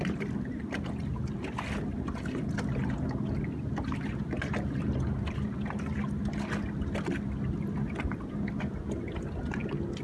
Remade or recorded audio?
recorded